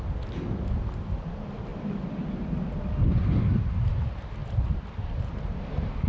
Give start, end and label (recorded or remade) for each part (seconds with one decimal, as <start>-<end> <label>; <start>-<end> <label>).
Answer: 0.0-1.7 recorded; 1.7-2.2 remade; 2.2-4.4 recorded; 4.4-6.1 remade